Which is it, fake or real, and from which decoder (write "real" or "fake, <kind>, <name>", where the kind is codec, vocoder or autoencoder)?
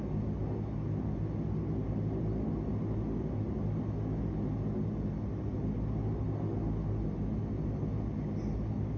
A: real